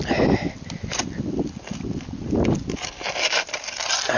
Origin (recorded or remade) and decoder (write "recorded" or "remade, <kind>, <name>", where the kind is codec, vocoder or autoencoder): recorded